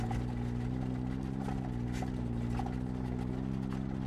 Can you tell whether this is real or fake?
real